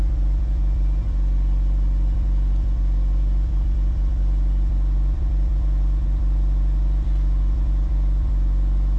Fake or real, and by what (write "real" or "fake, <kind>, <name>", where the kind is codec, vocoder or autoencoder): fake, vocoder, BigVGAN v2